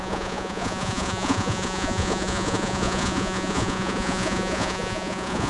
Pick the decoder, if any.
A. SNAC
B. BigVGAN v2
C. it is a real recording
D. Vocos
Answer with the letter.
D